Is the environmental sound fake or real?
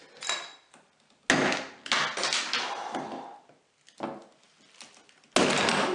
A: real